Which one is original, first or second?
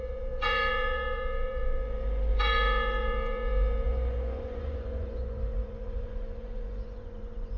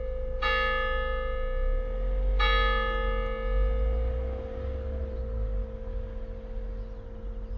second